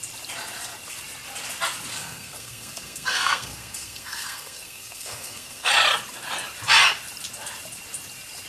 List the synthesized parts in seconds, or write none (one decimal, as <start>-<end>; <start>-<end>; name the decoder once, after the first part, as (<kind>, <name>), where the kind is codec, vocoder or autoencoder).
1.9-5.7 (codec, SNAC)